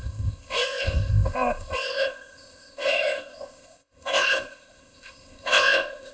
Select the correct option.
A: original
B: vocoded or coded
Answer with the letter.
B